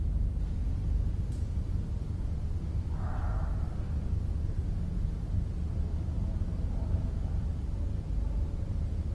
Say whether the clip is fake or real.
real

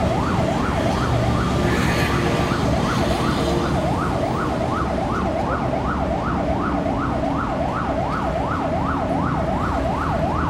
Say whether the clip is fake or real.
real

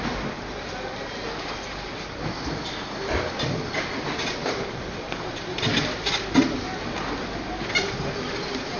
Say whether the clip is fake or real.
real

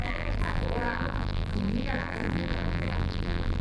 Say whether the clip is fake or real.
fake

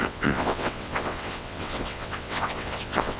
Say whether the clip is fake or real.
fake